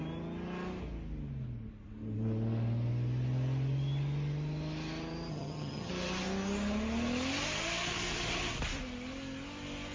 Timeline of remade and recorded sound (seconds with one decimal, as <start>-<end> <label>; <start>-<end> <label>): 0.0-5.3 recorded; 5.3-5.9 remade; 5.9-9.9 recorded